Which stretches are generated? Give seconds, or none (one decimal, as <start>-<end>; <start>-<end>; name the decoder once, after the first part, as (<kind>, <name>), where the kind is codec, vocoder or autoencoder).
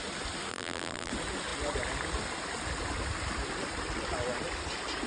0.5-1.1 (vocoder, BigVGAN v2)